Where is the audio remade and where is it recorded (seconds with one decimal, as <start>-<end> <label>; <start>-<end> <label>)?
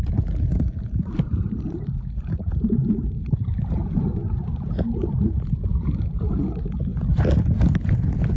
0.0-4.2 remade; 4.2-6.1 recorded; 6.1-6.9 remade; 6.9-8.4 recorded